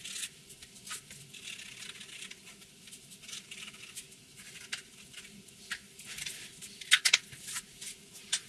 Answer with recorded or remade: recorded